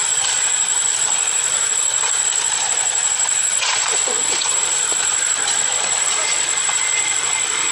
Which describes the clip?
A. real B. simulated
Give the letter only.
B